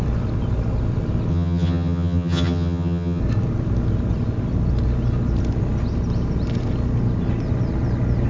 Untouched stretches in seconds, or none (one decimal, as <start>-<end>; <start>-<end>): 0.0-1.3; 3.2-8.3